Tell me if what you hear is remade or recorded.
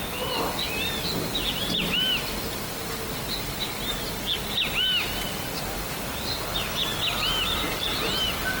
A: recorded